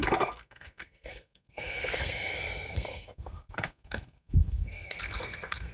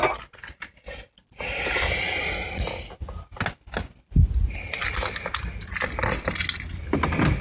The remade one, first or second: first